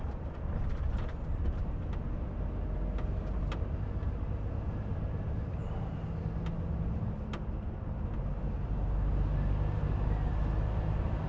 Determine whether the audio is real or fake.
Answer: real